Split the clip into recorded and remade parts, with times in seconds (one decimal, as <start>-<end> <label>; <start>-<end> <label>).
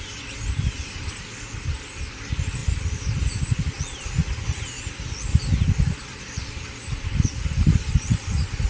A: 0.0-8.7 recorded